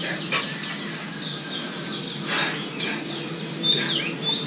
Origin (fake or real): real